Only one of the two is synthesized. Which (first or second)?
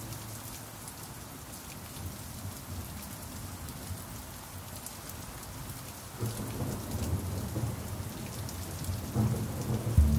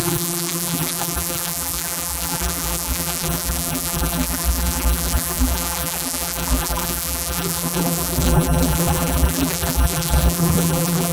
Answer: second